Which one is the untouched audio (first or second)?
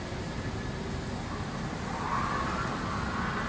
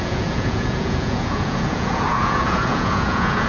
first